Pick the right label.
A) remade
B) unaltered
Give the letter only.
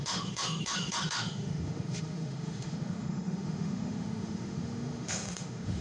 A